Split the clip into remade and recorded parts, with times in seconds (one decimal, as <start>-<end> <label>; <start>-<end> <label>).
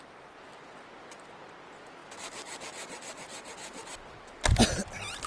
0.0-5.3 recorded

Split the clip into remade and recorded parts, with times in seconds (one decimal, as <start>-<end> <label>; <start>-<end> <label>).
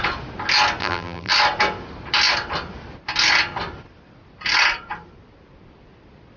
0.0-0.8 recorded; 0.8-1.3 remade; 1.3-6.4 recorded